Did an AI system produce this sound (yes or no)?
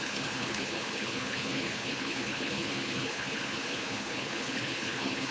yes